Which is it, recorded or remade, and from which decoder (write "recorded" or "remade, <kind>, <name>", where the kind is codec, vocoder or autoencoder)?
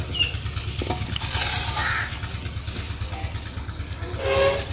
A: recorded